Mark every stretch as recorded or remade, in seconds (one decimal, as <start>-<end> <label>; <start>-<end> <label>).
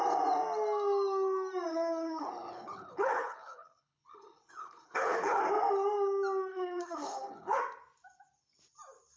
0.0-1.7 recorded; 1.7-5.4 remade; 5.4-6.5 recorded; 6.5-7.6 remade; 7.6-9.2 recorded